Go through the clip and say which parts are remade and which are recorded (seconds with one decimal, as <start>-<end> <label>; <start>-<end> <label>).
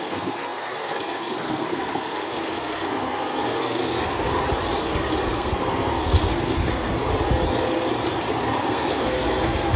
0.0-4.3 remade; 4.3-4.8 recorded; 4.8-7.0 remade; 7.0-8.6 recorded; 8.6-9.8 remade